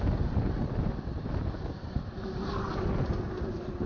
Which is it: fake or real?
real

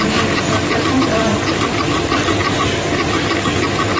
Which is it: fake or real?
fake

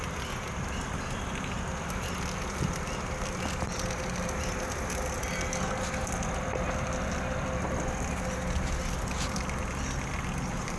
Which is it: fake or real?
real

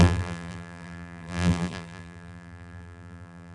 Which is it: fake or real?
fake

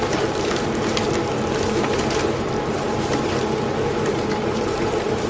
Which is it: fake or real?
fake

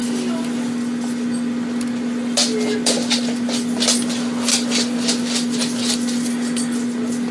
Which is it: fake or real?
real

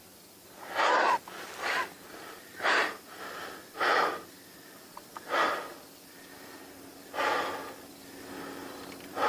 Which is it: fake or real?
real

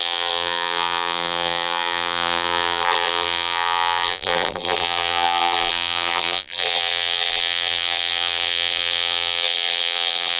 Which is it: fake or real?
fake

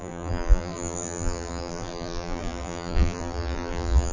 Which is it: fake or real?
fake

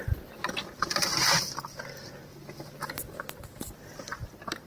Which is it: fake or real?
fake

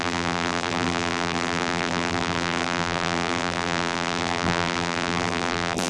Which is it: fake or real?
fake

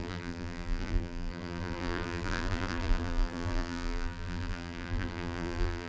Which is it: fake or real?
fake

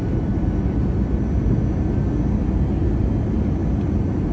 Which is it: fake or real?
real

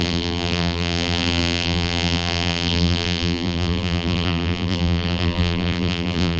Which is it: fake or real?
fake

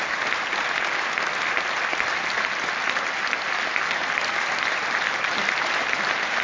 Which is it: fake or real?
real